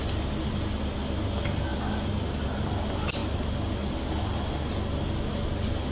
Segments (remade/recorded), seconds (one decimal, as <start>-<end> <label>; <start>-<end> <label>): 0.0-5.9 recorded